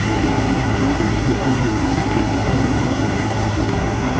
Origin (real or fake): fake